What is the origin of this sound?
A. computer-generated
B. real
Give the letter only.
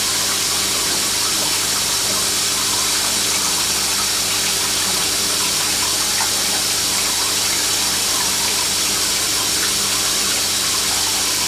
B